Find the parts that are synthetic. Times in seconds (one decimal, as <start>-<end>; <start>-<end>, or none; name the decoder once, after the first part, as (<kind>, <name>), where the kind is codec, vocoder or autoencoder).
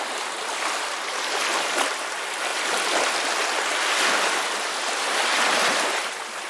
none